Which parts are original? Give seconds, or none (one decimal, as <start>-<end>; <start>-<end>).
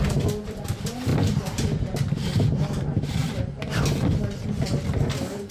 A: 0.0-1.1; 2.6-3.2; 4.7-5.5